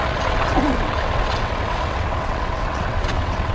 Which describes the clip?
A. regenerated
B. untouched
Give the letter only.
A